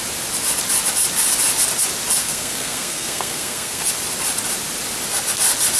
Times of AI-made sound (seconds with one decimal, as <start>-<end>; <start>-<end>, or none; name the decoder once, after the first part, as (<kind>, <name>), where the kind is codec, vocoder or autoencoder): 2.2-3.9 (codec, SNAC)